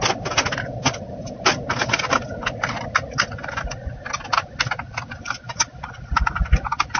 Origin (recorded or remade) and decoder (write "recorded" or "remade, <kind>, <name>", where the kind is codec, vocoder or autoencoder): recorded